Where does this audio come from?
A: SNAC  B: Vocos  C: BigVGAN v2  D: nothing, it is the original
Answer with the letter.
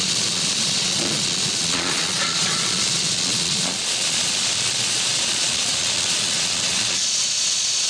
B